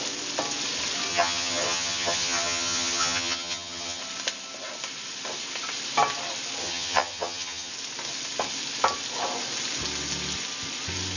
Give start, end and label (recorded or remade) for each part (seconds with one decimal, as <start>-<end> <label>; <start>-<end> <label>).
0.0-1.1 recorded; 1.1-4.0 remade; 4.0-6.6 recorded; 6.6-7.7 remade; 7.7-11.2 recorded